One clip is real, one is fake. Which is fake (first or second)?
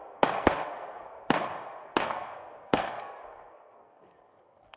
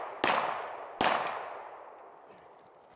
first